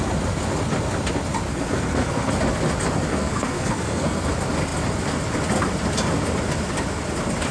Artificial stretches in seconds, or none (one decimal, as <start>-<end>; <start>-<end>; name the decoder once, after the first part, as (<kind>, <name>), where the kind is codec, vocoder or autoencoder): 1.5-2.3 (codec, SNAC); 3.1-4.3